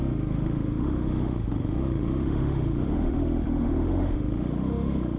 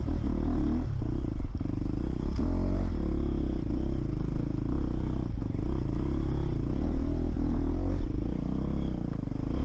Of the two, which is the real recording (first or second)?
second